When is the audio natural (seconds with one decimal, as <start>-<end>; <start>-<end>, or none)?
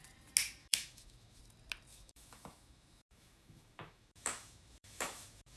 0.0-0.6; 1.4-1.9